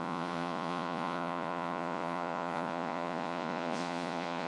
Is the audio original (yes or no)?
no